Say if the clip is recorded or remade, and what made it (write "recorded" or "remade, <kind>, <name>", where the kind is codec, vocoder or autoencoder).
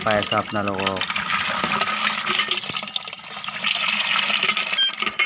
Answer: recorded